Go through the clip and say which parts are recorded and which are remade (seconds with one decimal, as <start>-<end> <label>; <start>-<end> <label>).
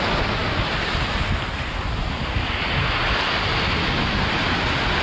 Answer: 0.0-5.0 recorded